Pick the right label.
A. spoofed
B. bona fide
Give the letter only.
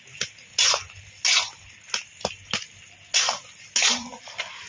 B